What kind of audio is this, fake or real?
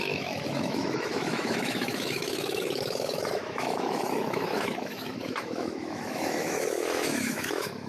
fake